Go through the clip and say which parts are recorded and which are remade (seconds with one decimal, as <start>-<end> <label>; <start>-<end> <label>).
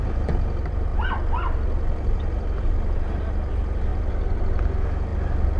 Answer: 0.0-5.6 recorded